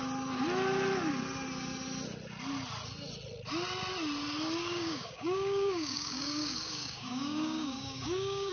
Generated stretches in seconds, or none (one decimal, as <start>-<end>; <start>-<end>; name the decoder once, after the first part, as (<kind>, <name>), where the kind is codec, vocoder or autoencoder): 4.6-8.5 (codec, DAC)